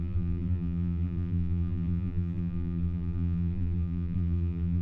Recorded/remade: remade